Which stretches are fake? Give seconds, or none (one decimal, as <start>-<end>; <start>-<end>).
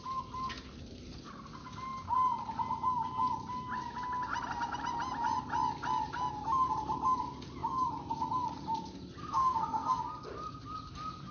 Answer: 9.2-10.0